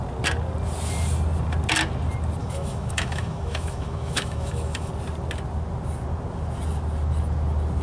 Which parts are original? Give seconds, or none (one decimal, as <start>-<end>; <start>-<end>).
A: 0.0-2.4; 4.9-7.8